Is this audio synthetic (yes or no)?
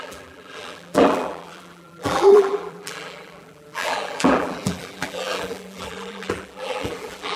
yes